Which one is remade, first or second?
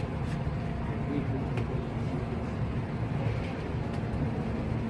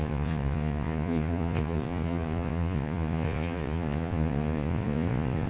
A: second